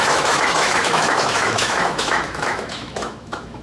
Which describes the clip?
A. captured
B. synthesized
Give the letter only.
B